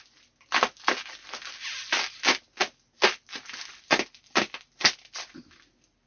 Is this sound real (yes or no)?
yes